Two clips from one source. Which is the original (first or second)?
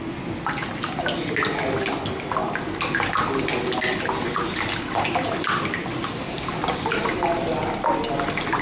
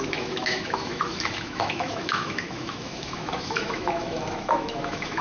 first